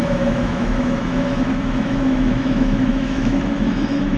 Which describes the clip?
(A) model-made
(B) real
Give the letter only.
A